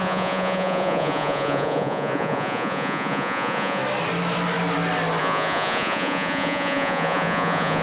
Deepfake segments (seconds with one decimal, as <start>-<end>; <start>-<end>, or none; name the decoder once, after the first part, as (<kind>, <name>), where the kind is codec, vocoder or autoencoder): 0.0-3.8 (vocoder, Vocos); 5.2-7.8